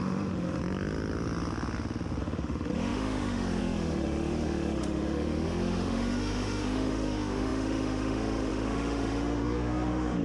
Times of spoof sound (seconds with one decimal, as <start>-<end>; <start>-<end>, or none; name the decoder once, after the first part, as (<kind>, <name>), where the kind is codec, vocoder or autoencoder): 0.0-0.6 (autoencoder, DAC-VAE); 2.2-10.2